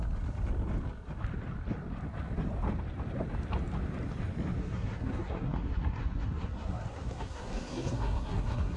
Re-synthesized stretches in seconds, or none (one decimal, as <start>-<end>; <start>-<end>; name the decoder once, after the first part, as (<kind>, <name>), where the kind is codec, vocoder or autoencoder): 4.6-8.8 (codec, SNAC)